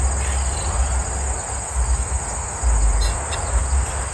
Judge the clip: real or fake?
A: real